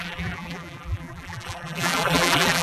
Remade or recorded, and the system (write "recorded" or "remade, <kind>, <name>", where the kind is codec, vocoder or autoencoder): remade, vocoder, BigVGAN v2